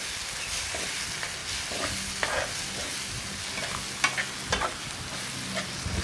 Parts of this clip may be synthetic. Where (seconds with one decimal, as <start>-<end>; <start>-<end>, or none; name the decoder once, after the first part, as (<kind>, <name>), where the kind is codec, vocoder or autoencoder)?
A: none